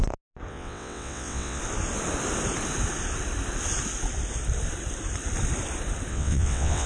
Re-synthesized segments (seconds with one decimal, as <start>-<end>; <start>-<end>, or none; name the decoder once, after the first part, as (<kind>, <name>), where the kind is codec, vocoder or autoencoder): 0.5-1.6 (vocoder, WaveNeXt); 6.1-6.9